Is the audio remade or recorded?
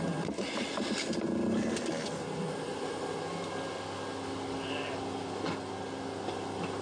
recorded